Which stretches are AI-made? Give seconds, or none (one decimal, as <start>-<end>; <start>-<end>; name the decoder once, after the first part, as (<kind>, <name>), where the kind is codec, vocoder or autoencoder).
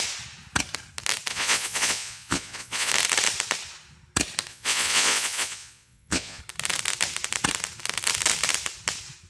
1.3-2.9 (vocoder, Vocos); 4.5-6.4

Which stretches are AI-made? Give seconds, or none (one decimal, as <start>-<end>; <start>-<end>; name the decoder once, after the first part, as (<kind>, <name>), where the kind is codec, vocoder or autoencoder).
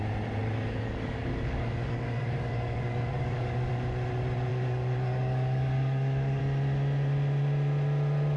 0.4-3.7 (codec, DAC); 4.5-6.4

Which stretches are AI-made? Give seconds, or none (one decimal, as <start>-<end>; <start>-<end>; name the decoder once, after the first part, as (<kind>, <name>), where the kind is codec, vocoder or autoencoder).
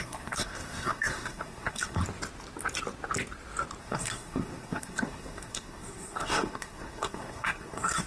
0.0-2.0 (codec, SNAC); 3.8-8.1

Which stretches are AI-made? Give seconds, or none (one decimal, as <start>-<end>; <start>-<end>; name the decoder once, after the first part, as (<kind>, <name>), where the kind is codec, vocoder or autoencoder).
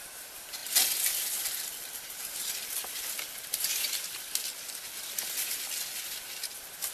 none